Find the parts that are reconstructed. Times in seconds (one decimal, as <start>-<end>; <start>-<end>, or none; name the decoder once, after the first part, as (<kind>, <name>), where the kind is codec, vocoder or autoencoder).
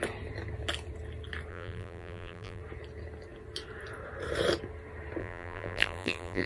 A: 1.5-2.6 (vocoder, BigVGAN v2); 5.2-6.5